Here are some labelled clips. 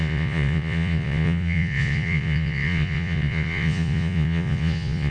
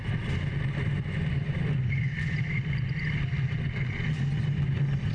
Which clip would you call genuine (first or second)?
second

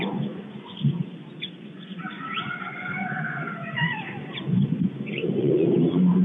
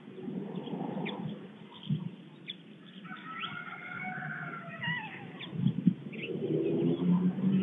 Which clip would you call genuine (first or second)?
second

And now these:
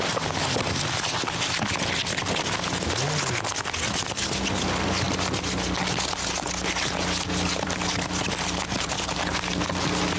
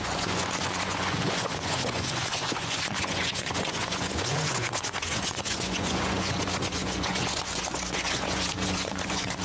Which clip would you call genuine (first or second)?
first